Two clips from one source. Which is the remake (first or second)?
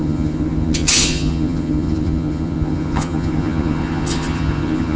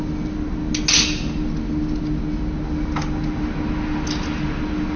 first